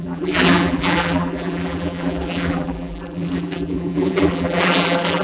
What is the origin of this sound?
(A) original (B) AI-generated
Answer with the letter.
B